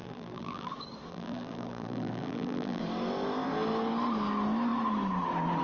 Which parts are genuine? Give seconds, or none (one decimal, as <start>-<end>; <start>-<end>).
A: 0.7-1.1; 2.8-5.6